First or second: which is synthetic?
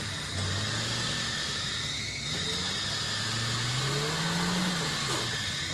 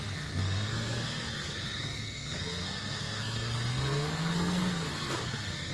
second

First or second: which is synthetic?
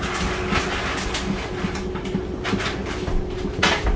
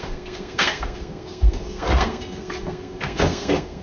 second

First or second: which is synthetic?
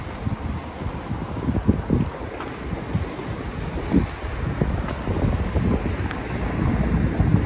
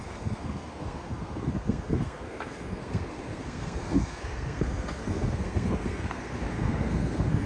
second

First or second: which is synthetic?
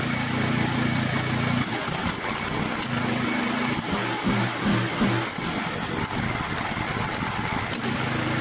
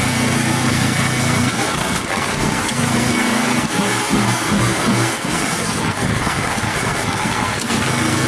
second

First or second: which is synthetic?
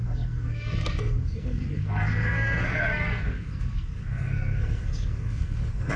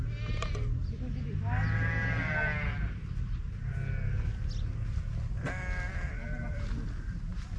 first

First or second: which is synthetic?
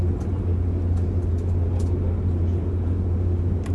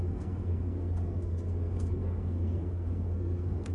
second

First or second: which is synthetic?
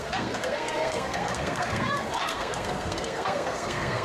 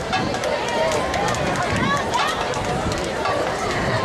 first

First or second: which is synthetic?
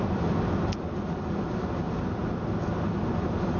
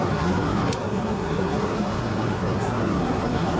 second